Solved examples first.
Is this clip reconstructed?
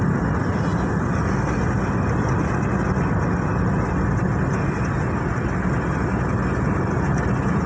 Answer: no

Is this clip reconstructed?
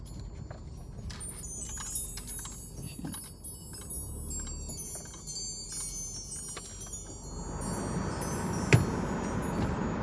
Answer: no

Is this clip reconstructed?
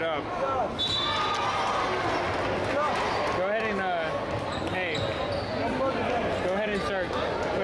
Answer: no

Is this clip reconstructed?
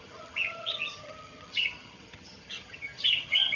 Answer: yes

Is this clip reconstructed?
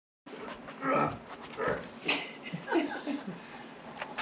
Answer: no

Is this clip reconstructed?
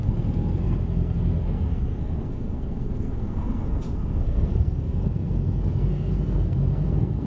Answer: yes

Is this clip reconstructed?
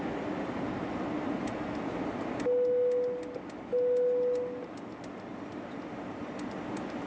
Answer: no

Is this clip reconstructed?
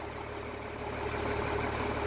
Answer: no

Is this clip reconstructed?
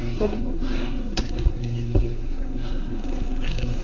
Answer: yes